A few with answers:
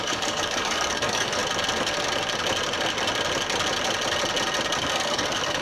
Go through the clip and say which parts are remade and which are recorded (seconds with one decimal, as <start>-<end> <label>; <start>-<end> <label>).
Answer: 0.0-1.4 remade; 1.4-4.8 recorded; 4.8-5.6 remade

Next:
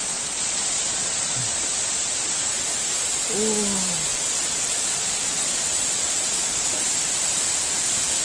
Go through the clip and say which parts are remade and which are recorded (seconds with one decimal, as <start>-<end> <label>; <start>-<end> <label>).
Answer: 0.0-1.4 remade; 1.4-4.1 recorded; 4.1-6.6 remade; 6.6-8.2 recorded

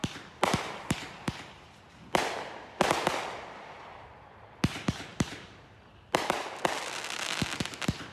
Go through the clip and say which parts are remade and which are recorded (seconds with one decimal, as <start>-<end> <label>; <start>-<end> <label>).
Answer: 0.0-8.1 recorded

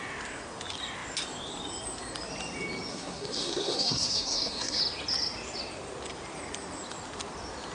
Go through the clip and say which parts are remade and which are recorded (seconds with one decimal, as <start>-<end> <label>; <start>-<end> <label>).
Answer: 0.0-2.9 recorded; 2.9-4.8 remade; 4.8-7.7 recorded

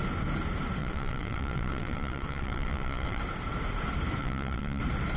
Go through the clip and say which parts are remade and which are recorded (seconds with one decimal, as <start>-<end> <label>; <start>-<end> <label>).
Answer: 0.0-0.8 recorded; 0.8-3.2 remade; 3.2-4.2 recorded; 4.2-4.8 remade; 4.8-5.2 recorded